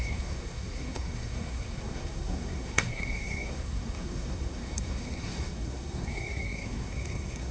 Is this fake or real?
fake